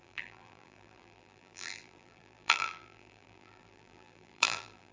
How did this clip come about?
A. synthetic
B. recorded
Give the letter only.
A